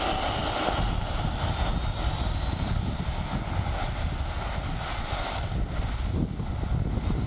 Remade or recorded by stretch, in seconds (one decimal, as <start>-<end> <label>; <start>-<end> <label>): 0.0-7.3 recorded